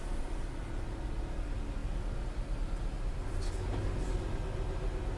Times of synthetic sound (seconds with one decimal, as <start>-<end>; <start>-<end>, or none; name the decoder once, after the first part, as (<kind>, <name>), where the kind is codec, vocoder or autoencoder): none